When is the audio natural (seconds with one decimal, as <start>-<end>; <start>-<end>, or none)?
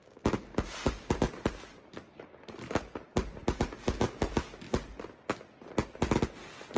0.0-6.8